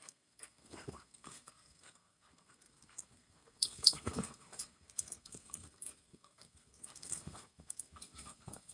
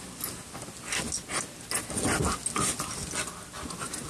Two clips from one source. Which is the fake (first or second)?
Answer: first